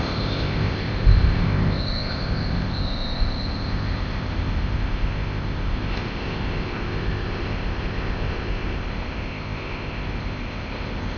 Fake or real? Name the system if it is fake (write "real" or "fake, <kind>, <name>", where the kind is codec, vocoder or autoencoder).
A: fake, codec, ZipCodec